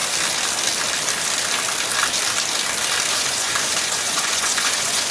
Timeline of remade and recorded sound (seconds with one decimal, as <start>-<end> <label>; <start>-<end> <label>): 0.0-3.1 recorded; 3.1-5.1 remade